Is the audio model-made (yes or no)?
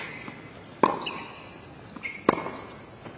no